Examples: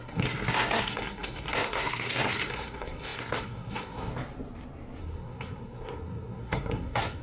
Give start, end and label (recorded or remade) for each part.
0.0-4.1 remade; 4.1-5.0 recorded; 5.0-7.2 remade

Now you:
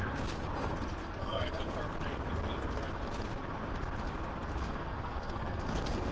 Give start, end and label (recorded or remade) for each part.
0.0-1.0 recorded; 1.0-1.7 remade; 1.7-4.6 recorded; 4.6-6.1 remade

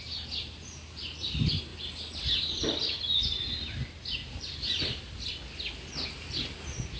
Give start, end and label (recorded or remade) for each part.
0.0-7.0 recorded

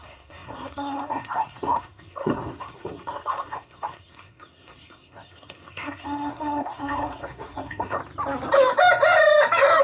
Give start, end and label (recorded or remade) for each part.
0.0-8.0 remade; 8.0-9.8 recorded

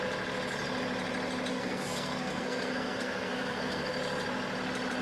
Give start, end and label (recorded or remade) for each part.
0.0-1.5 recorded; 1.5-3.9 remade; 3.9-5.0 recorded